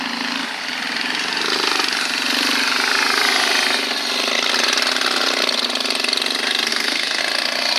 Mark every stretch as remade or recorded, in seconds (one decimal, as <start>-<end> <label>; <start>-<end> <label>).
0.0-6.7 recorded; 6.7-7.2 remade; 7.2-7.8 recorded